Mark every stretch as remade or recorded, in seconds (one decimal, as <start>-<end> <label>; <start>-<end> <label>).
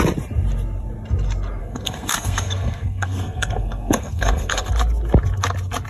0.0-1.6 recorded; 1.6-4.7 remade; 4.7-5.9 recorded